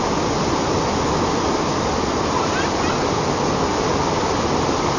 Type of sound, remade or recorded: recorded